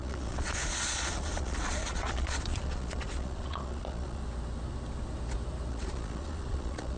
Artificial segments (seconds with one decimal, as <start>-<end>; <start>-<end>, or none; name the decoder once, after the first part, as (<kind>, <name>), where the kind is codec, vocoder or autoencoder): 0.0-4.2 (vocoder, Vocos); 5.7-7.0